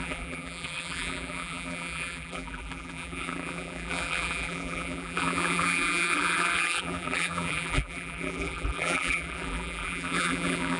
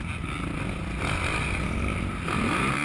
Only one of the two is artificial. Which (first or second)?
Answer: first